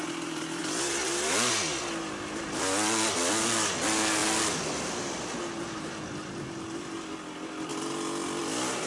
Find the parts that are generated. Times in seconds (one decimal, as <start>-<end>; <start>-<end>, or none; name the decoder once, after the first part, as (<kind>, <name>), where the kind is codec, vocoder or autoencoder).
none